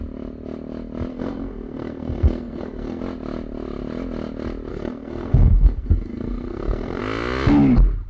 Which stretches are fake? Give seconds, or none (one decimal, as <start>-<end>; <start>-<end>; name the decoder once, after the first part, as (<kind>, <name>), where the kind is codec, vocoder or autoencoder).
1.1-3.0 (codec, SNAC); 4.7-7.0